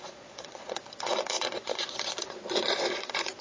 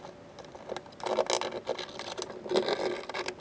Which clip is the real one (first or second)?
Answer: second